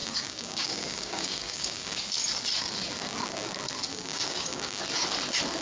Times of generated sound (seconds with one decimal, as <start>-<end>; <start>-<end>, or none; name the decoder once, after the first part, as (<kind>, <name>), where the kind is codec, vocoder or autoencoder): 0.0-2.0 (codec, DAC); 3.9-4.8